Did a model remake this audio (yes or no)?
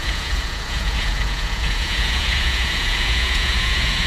yes